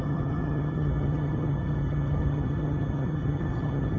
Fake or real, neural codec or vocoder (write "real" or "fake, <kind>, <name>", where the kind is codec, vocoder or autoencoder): fake, vocoder, HiFi-GAN